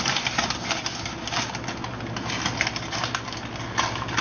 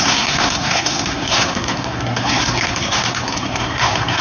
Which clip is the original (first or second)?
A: first